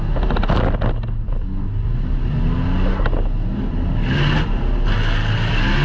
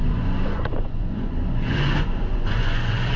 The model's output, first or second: second